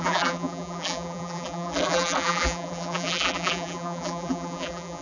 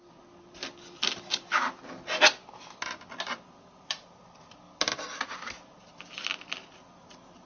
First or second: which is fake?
first